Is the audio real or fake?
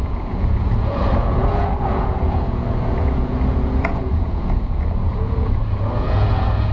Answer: fake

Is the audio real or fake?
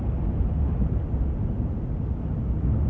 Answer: real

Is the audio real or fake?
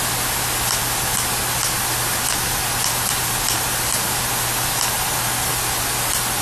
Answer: real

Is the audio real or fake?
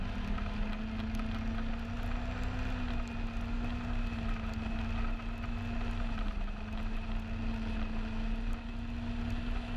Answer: real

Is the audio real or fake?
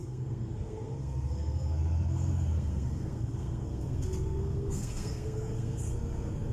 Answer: fake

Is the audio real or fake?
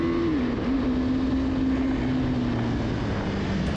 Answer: real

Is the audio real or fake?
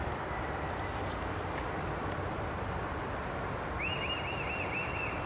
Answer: real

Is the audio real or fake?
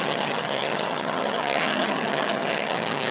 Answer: fake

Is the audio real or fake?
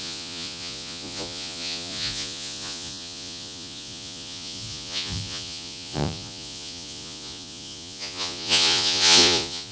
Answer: fake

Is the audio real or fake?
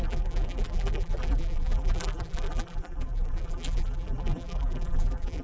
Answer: fake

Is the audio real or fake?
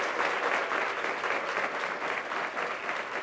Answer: real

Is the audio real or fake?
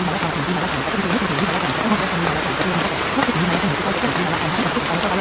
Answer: real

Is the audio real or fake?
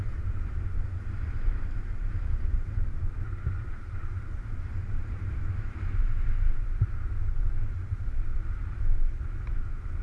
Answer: fake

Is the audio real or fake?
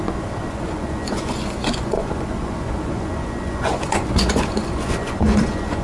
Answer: fake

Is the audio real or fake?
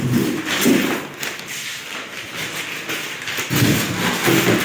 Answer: real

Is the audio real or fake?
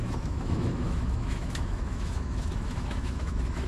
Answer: fake